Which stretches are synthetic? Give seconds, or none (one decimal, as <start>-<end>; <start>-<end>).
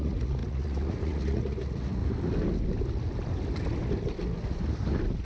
0.0-2.0